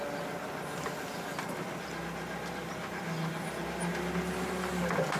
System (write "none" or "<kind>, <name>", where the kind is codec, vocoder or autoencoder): none